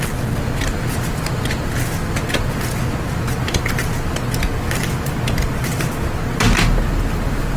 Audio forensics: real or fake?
real